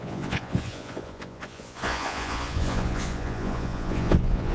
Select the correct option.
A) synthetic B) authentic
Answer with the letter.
A